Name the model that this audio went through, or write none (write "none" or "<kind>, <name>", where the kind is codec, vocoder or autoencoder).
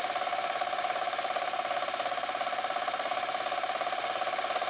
none